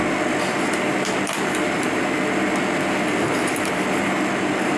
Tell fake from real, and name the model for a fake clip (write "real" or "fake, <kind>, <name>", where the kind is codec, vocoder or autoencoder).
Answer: real